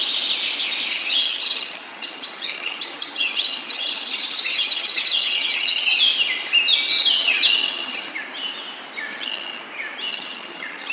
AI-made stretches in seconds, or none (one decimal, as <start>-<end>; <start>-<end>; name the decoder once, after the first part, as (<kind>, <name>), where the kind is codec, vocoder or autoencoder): 0.9-6.0 (vocoder, HiFi-GAN); 6.9-8.1; 9.1-9.6; 10.1-10.9